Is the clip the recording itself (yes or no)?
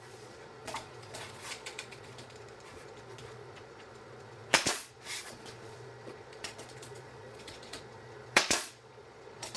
no